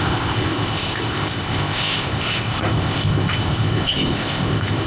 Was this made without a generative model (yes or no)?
no